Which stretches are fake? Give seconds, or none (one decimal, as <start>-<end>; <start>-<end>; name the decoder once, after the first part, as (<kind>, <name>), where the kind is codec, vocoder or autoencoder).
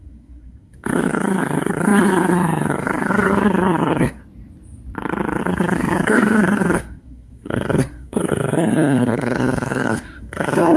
0.0-4.2 (codec, SNAC); 5.4-10.8